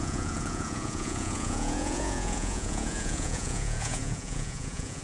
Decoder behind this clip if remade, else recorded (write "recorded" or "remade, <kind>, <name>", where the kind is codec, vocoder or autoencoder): remade, vocoder, Vocos